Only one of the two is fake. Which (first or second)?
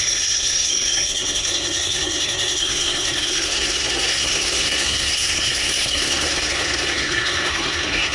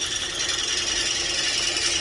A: first